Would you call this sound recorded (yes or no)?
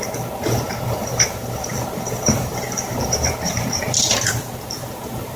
no